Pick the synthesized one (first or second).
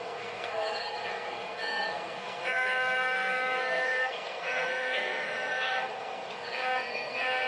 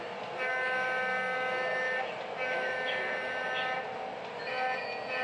first